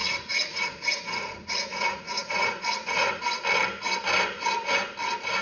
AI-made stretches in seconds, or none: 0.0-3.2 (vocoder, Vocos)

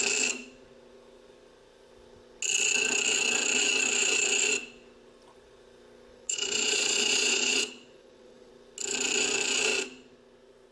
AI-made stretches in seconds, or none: 6.1-8.5 (vocoder, Vocos)

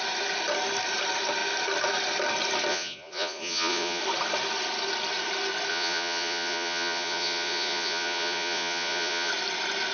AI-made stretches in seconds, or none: 2.7-4.0 (vocoder, Vocos); 5.7-9.3